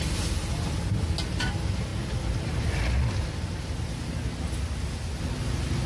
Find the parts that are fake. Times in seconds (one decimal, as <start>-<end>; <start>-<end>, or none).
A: none